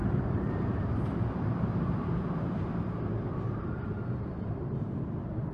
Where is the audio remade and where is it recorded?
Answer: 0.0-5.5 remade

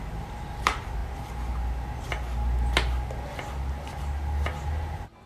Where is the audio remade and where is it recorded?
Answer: 0.0-5.3 recorded

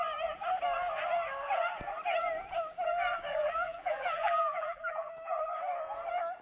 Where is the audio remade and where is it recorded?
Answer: 0.0-3.3 recorded; 3.3-5.1 remade; 5.1-6.4 recorded

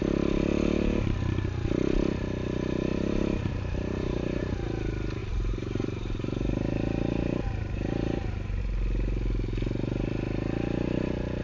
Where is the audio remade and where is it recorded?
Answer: 0.0-2.9 recorded; 2.9-4.4 remade; 4.4-5.2 recorded; 5.2-8.6 remade; 8.6-11.4 recorded